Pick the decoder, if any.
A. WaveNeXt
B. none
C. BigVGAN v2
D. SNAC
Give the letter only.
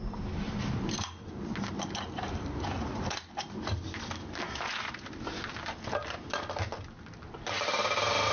B